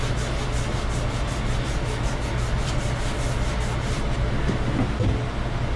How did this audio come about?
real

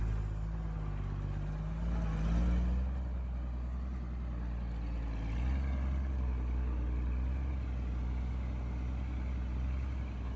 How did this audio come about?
real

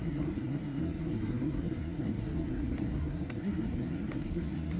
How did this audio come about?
fake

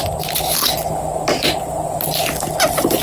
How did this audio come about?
real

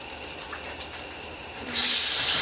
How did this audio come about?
real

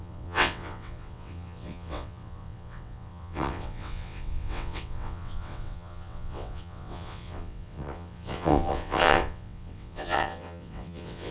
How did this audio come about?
fake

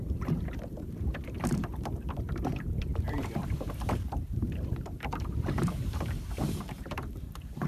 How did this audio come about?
fake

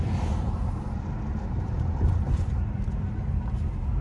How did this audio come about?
fake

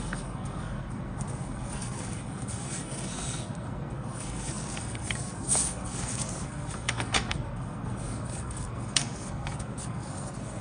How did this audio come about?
fake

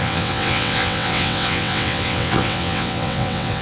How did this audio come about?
fake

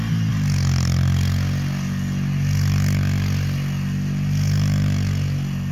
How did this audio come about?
real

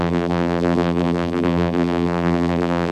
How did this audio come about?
fake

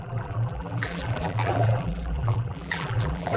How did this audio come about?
fake